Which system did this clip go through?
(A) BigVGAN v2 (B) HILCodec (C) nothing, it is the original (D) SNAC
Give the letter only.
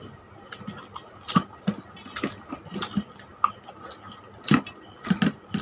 C